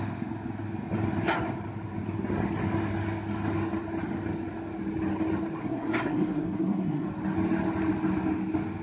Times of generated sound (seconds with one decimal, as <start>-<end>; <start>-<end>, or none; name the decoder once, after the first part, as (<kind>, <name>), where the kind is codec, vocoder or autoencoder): 5.6-7.1 (codec, SNAC)